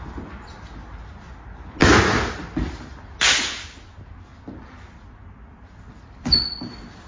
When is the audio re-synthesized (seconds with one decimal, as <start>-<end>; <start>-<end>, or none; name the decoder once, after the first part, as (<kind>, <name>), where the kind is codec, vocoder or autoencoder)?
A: none